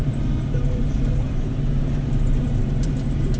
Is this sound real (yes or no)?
no